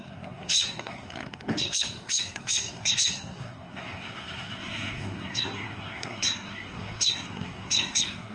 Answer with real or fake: fake